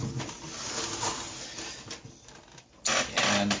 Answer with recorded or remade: recorded